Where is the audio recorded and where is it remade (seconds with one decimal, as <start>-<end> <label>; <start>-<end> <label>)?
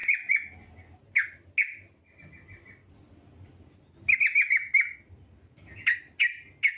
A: 0.0-6.8 recorded